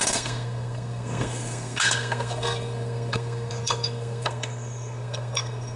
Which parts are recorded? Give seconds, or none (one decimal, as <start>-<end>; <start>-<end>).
none